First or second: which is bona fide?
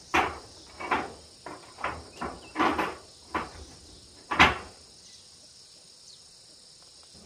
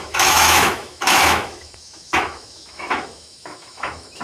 first